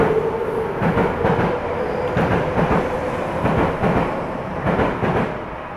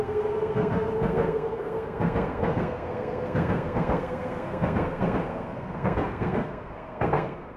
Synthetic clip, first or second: second